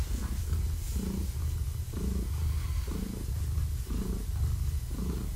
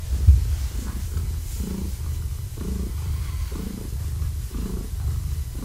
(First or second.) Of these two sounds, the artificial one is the second